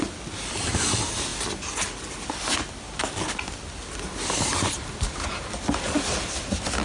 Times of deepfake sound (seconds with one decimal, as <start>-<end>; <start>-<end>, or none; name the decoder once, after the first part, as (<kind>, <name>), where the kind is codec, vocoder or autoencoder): none